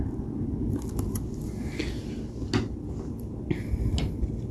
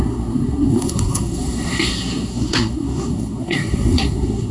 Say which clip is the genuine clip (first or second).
first